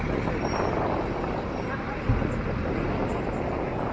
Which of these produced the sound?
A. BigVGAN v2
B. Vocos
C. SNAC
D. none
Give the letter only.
D